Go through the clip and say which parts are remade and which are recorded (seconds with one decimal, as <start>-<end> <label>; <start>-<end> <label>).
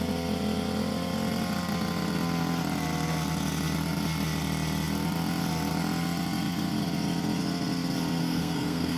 0.0-8.2 recorded; 8.2-9.0 remade